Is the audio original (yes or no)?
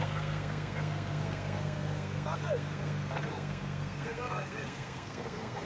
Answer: no